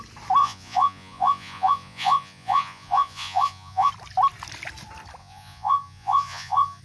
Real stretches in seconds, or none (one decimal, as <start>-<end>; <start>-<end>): 0.0-0.4; 3.9-5.2